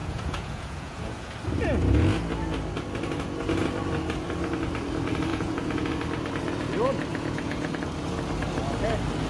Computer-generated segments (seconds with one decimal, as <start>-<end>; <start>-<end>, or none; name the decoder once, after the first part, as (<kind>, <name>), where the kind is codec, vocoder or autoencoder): 0.0-1.3 (vocoder, Vocos); 5.3-5.9; 7.1-7.7